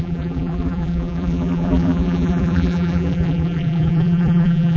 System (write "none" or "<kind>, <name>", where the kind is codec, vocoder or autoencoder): vocoder, BigVGAN v2